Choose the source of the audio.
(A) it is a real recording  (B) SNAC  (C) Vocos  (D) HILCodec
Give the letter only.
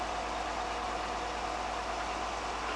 A